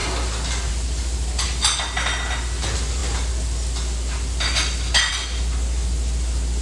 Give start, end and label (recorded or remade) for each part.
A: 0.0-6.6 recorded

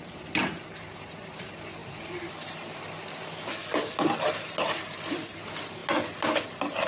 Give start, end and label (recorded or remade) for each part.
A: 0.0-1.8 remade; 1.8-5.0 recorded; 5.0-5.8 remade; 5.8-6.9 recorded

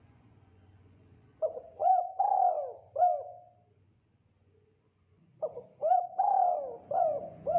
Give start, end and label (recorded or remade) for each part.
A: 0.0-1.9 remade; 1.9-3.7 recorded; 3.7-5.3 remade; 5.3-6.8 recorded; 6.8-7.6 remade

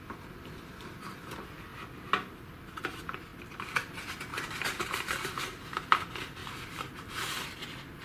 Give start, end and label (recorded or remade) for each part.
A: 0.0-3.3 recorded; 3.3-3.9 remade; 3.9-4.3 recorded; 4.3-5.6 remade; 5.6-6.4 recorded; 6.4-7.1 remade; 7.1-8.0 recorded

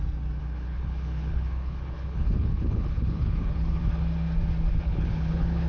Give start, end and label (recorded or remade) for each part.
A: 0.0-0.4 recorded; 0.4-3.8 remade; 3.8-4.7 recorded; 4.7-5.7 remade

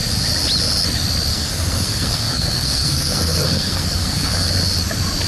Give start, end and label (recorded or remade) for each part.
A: 0.0-1.3 recorded; 1.3-4.5 remade; 4.5-5.3 recorded